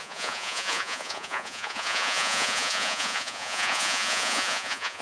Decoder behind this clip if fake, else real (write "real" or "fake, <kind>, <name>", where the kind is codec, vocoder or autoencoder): fake, vocoder, Vocos